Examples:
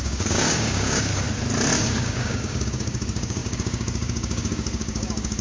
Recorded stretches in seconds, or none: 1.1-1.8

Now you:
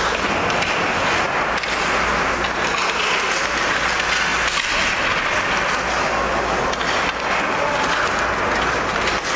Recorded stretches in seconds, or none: 0.0-9.4